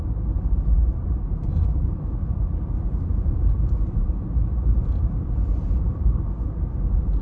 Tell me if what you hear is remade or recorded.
remade